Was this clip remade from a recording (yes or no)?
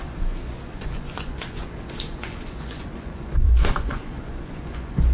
yes